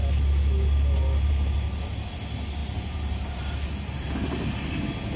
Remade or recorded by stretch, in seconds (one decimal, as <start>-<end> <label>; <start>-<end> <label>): 0.0-2.6 recorded; 2.6-4.1 remade; 4.1-5.2 recorded